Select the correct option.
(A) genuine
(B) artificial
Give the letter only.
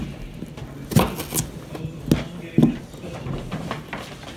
A